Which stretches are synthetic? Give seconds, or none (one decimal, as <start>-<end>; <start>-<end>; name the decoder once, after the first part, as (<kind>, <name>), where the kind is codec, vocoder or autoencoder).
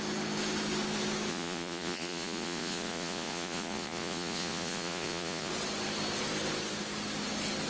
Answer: 1.3-5.5 (vocoder, Vocos)